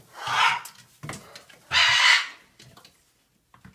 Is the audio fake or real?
real